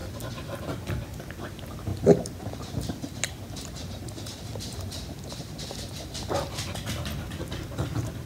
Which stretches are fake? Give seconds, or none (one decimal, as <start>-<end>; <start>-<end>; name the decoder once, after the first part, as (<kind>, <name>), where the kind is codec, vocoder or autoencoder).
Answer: none